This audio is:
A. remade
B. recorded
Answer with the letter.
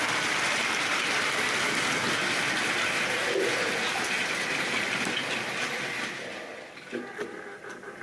B